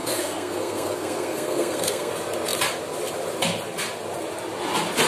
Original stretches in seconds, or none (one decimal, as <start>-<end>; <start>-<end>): 2.1-5.1

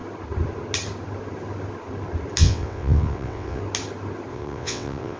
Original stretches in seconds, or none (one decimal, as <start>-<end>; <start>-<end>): 0.0-2.4; 3.6-4.3

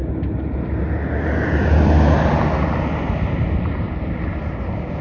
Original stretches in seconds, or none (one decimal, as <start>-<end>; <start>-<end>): 0.0-5.0

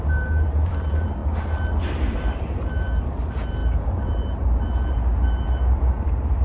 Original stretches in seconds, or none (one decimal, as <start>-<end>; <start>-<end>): 1.2-2.0